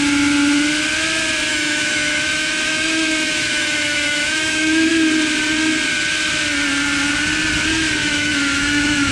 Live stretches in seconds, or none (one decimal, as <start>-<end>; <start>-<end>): 0.0-1.5; 4.9-8.0